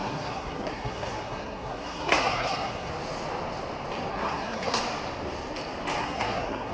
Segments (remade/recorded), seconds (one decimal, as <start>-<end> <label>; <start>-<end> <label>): 0.0-2.9 remade; 2.9-4.1 recorded; 4.1-4.8 remade; 4.8-6.0 recorded; 6.0-6.7 remade